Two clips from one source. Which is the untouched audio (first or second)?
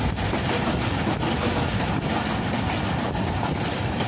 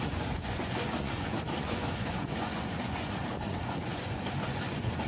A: first